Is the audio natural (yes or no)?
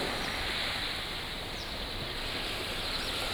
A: yes